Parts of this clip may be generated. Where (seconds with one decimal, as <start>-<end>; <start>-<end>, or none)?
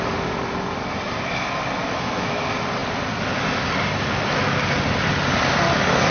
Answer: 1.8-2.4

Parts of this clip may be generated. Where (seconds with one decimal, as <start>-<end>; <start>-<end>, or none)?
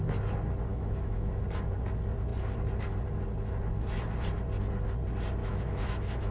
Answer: 0.7-1.4; 5.4-6.3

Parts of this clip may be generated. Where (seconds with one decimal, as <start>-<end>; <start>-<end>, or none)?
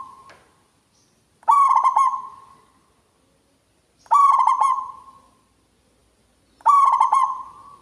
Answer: none